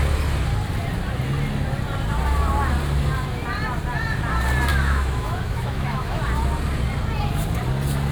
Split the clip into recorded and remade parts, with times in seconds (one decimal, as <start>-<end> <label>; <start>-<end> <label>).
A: 0.0-4.7 recorded; 4.7-6.2 remade; 6.2-8.1 recorded